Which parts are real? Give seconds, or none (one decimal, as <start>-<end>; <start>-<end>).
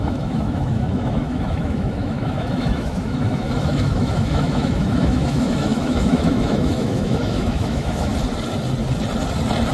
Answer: 8.1-9.7